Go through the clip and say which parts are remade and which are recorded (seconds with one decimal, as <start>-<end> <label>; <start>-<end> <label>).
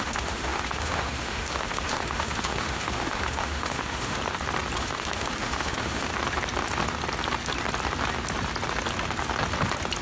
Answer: 0.0-4.2 remade; 4.2-4.8 recorded; 4.8-6.1 remade; 6.1-10.0 recorded